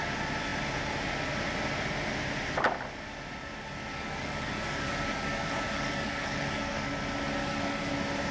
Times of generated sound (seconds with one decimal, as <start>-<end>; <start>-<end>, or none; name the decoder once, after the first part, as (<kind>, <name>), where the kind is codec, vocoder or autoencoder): 3.9-6.9 (codec, DAC); 7.4-7.9